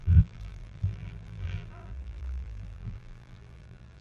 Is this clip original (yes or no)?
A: no